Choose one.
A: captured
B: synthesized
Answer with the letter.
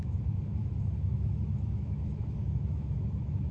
B